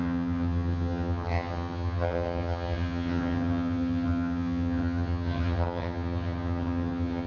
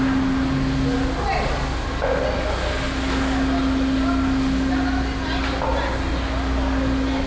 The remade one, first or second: first